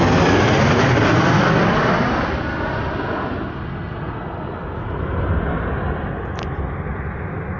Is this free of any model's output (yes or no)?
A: yes